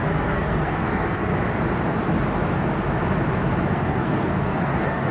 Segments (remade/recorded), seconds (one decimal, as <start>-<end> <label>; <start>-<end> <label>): 0.0-1.3 remade; 1.3-3.7 recorded; 3.7-5.1 remade